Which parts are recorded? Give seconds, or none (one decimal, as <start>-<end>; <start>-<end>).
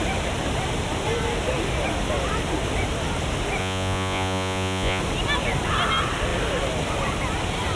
0.0-3.6; 5.0-7.8